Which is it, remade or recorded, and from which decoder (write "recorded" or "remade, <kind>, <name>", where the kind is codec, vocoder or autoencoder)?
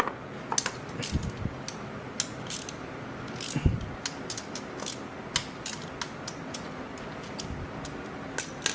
recorded